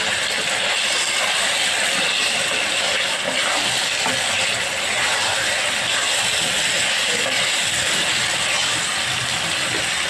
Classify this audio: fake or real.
real